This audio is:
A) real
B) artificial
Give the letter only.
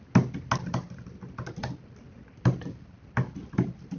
A